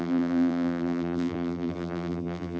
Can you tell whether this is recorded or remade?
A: remade